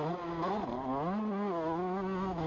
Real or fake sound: real